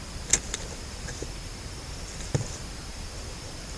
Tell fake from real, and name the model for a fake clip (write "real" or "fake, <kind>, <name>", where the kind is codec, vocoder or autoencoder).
real